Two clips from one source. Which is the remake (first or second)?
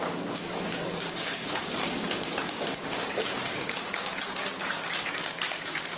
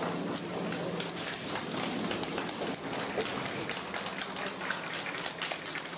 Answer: first